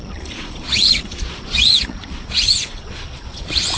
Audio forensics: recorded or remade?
remade